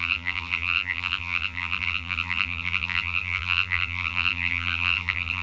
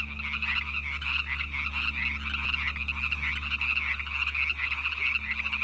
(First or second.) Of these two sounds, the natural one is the second